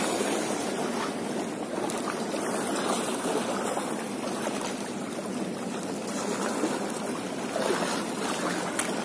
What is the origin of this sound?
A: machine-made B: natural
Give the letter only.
B